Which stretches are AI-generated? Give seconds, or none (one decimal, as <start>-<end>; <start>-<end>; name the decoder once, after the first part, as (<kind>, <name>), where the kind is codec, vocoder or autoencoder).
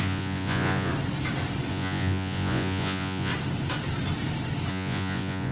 0.0-0.9 (vocoder, Vocos); 1.7-3.3; 4.7-5.5